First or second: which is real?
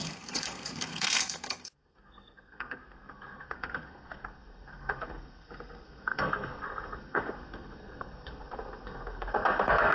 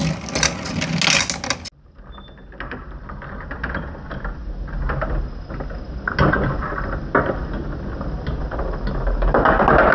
second